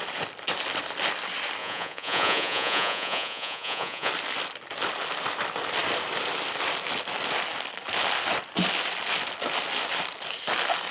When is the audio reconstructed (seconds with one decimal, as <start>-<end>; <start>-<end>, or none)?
1.6-4.1

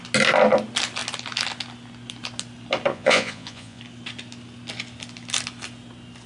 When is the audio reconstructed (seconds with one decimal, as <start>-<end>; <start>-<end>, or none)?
2.9-3.8

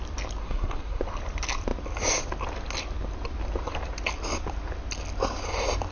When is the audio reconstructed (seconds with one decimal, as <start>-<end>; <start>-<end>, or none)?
0.4-1.0

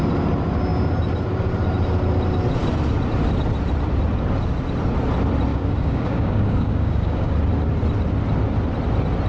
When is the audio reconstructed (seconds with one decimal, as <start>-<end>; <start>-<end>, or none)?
5.5-7.3

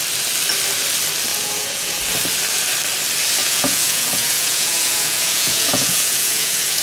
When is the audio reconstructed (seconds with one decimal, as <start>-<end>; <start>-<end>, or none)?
1.3-2.0; 3.4-6.8